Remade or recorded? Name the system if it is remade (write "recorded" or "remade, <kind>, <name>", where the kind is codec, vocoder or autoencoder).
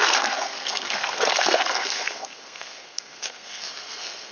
remade, codec, SNAC